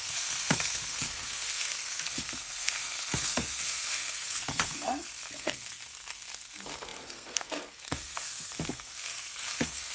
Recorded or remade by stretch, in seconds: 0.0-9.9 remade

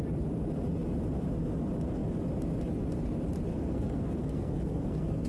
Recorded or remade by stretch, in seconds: 0.0-3.5 recorded; 3.5-5.3 remade